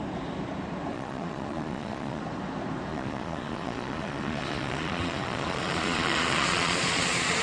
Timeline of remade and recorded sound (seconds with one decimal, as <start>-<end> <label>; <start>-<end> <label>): 0.0-0.9 recorded; 0.9-2.2 remade; 2.2-2.9 recorded; 2.9-7.4 remade